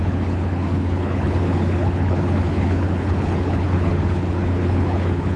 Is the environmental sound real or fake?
fake